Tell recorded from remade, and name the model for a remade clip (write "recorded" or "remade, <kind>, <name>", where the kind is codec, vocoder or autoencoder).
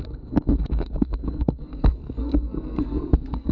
remade, codec, SNAC